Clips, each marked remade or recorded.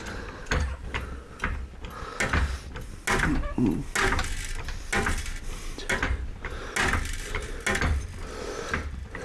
recorded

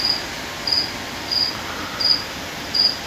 recorded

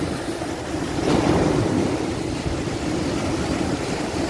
recorded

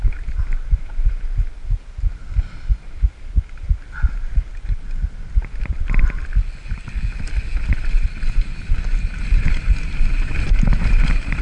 recorded